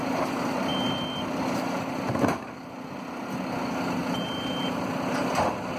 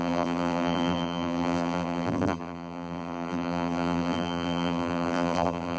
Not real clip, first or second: second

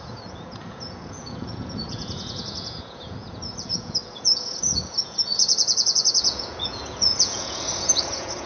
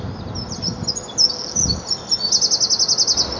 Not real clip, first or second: first